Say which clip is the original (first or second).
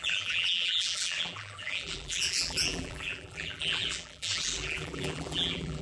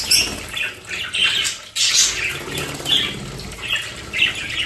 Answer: second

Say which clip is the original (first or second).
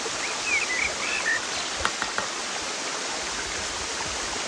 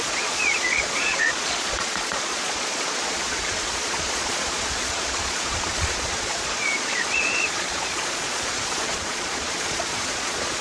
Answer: first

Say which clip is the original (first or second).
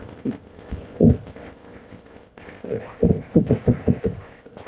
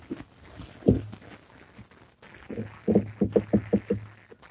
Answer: second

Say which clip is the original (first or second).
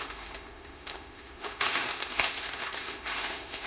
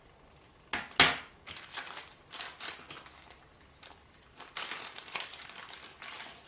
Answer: second